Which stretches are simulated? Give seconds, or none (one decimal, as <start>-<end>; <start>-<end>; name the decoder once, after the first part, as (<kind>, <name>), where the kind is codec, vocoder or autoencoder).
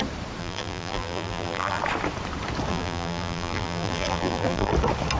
0.4-1.8 (vocoder, BigVGAN v2); 2.7-4.7